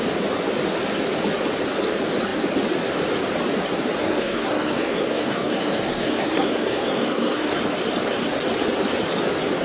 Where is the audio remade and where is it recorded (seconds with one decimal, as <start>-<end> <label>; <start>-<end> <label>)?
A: 0.0-4.0 recorded; 4.0-7.6 remade; 7.6-9.6 recorded